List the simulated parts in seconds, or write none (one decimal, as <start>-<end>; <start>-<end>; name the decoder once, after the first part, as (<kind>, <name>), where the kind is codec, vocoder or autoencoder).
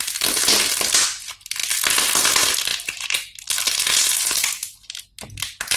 none